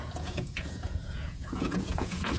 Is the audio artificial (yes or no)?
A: yes